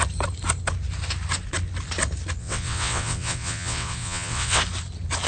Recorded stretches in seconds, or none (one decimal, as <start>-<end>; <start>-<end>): 0.0-2.4; 4.6-5.3